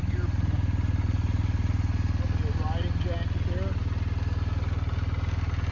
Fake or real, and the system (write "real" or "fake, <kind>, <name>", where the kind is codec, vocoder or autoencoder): real